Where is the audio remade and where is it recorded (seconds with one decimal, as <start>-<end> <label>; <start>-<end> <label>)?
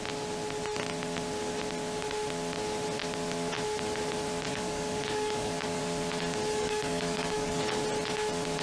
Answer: 0.0-4.5 recorded; 4.5-5.8 remade; 5.8-6.5 recorded; 6.5-7.6 remade; 7.6-8.6 recorded